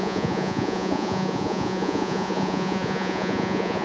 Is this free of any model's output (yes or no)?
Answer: no